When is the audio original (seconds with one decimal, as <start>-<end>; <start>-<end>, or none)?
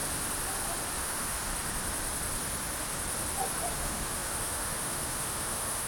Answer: 0.0-1.0; 1.5-3.7